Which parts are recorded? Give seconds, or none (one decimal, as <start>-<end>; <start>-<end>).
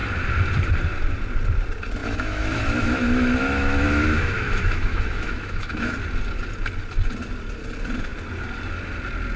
0.0-2.0; 5.9-9.4